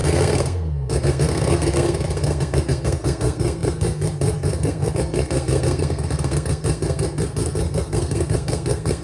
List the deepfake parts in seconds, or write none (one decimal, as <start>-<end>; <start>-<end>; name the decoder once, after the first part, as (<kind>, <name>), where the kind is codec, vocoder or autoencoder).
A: 0.0-9.0 (codec, SNAC)